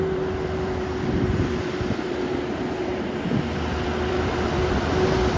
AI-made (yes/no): yes